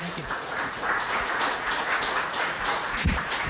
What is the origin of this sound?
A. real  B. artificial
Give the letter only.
B